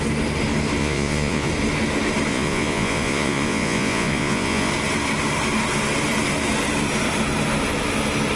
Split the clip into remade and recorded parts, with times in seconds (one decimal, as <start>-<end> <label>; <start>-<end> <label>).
0.0-0.8 recorded; 0.8-1.5 remade; 1.5-2.3 recorded; 2.3-4.7 remade; 4.7-8.4 recorded